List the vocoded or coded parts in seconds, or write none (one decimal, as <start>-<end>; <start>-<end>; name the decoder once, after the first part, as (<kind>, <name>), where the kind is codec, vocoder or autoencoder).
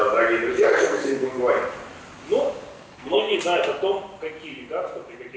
0.5-1.4 (codec, SNAC); 2.7-3.4